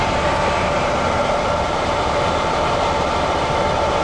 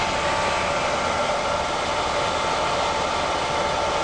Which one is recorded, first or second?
second